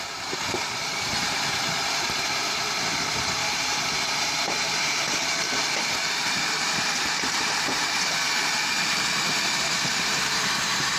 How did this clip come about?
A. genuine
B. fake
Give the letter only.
B